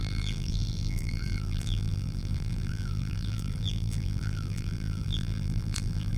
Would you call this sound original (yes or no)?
no